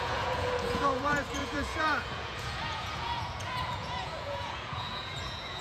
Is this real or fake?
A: fake